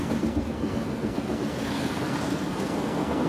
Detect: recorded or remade remade